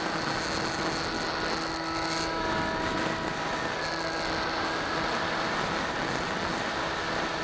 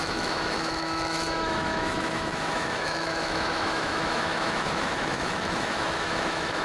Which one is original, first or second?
first